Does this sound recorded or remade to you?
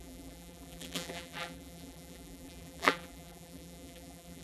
remade